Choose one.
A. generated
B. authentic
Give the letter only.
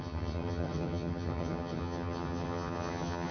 A